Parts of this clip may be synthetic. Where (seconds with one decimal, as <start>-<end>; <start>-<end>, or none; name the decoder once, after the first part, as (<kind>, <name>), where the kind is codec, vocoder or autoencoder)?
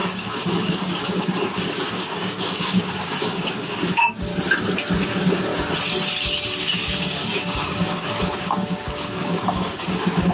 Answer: 0.0-4.3 (codec, DAC); 5.0-5.5; 6.6-10.3